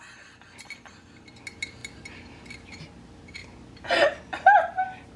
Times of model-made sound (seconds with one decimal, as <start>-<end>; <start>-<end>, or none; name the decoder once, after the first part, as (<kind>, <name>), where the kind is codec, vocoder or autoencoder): none